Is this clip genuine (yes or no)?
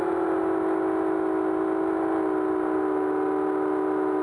yes